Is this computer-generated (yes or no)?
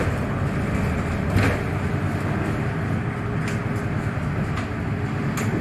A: no